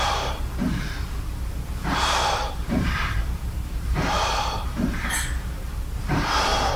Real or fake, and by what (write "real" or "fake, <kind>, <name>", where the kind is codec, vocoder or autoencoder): fake, vocoder, BigVGAN v2